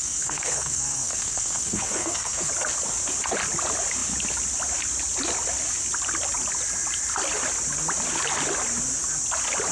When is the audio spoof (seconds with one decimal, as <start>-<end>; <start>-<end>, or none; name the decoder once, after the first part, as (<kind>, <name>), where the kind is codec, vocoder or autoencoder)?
0.0-2.5 (codec, SNAC)